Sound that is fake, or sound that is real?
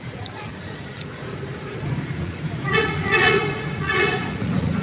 fake